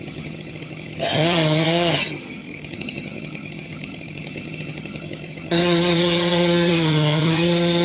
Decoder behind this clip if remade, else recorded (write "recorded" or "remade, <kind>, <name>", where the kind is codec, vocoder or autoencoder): remade, vocoder, HiFi-GAN